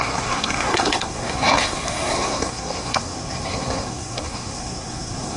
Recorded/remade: remade